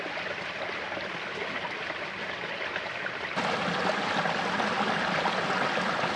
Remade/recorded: recorded